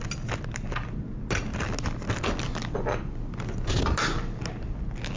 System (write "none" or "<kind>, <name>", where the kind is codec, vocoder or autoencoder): none